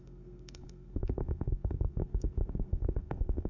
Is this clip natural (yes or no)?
no